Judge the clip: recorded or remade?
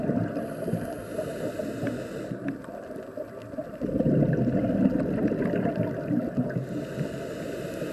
recorded